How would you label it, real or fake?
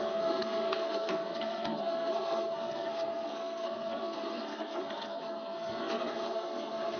fake